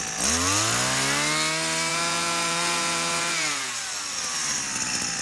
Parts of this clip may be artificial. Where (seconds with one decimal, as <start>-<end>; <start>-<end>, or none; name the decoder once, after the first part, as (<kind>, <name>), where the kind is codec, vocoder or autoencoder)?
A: 1.9-3.7 (vocoder, Vocos)